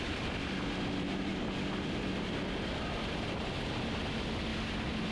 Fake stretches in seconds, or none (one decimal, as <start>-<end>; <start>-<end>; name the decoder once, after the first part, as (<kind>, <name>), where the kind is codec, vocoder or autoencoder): none